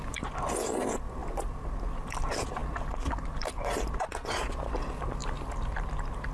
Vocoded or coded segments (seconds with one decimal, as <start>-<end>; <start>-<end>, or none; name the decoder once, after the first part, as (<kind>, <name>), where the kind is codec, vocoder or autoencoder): none